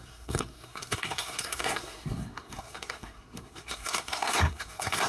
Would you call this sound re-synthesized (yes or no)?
yes